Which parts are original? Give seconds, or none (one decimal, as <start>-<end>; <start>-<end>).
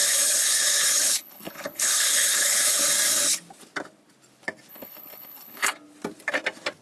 2.8-4.7; 5.7-6.8